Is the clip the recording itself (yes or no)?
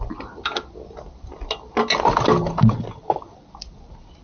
yes